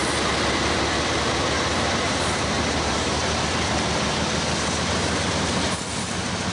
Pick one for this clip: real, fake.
fake